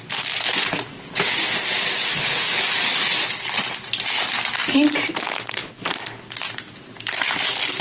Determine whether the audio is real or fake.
real